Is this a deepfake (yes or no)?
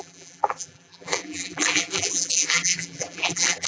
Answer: yes